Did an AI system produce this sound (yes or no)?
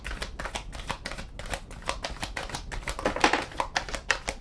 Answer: no